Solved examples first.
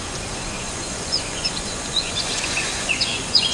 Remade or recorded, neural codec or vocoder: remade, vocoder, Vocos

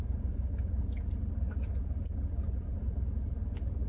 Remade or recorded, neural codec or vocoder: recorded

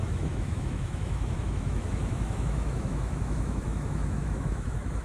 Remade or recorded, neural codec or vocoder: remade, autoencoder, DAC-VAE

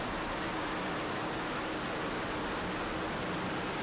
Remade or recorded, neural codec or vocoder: recorded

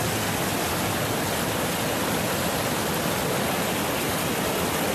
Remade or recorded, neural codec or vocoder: recorded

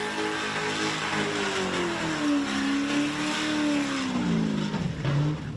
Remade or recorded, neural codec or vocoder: recorded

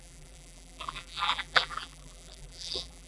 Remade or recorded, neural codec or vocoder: remade, vocoder, BigVGAN v2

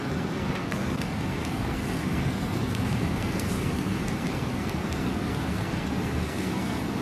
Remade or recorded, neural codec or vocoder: remade, codec, SNAC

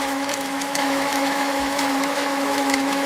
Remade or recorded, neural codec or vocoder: remade, autoencoder, DAC-VAE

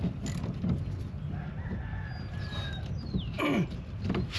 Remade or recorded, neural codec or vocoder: recorded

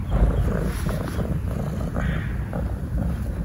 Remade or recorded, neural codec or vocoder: recorded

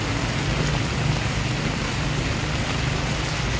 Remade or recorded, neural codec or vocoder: recorded